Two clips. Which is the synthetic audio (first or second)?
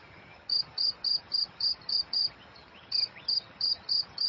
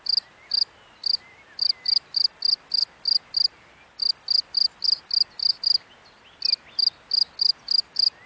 first